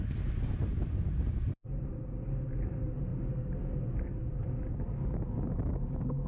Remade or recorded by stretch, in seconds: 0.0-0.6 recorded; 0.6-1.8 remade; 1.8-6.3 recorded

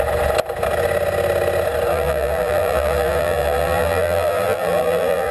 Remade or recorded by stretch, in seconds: 0.0-1.9 recorded; 1.9-5.3 remade